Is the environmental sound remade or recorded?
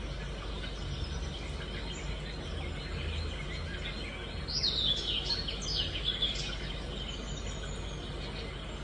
recorded